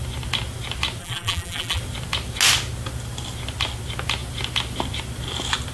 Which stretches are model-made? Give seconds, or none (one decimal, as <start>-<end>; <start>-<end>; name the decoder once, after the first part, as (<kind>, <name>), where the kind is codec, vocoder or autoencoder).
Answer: 1.0-1.8 (vocoder, BigVGAN v2)